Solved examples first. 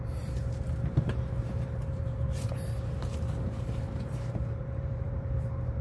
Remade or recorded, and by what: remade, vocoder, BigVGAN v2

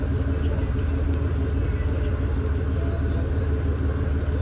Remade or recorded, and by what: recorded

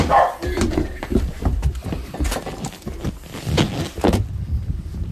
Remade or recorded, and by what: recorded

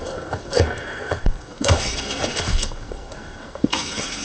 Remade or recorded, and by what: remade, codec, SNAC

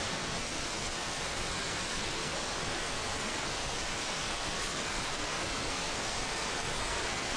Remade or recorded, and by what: remade, codec, SNAC